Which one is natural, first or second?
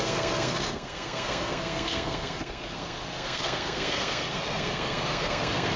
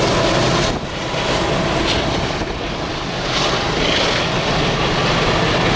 second